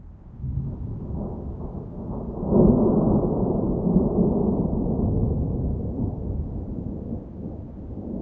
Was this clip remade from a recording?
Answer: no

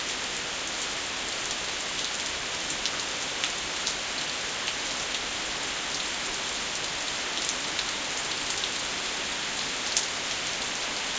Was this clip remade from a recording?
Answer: no